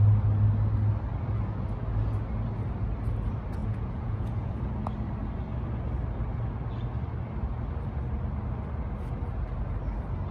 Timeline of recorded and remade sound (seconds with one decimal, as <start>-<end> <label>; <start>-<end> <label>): 0.0-3.6 recorded; 3.6-4.5 remade; 4.5-10.3 recorded